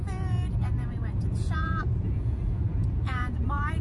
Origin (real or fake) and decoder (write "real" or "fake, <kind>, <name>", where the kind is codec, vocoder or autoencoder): fake, vocoder, Vocos